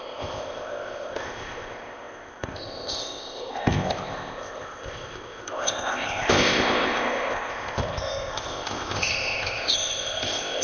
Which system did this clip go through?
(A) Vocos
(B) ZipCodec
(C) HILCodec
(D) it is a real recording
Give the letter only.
B